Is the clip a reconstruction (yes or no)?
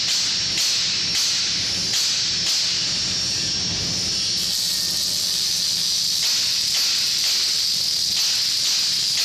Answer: no